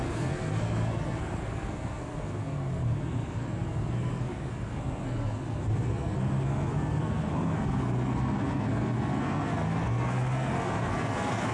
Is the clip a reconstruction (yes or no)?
yes